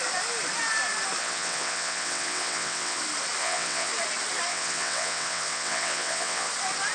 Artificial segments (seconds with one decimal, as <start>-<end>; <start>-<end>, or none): 1.2-3.0; 3.4-3.9; 4.5-6.5